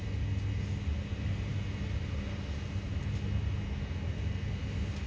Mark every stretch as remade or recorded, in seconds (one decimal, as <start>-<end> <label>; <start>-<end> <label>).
0.0-5.1 recorded